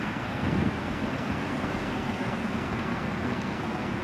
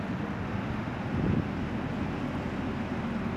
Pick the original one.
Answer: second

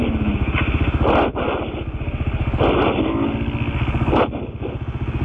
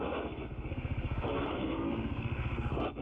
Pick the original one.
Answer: first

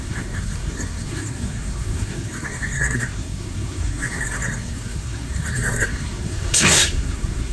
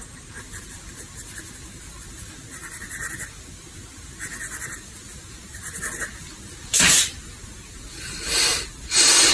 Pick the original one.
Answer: second